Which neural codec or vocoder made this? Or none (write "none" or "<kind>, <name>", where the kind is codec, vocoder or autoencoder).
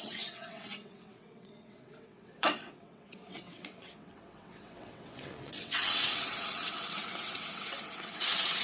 vocoder, WaveNeXt